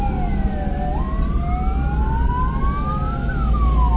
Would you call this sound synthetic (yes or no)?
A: no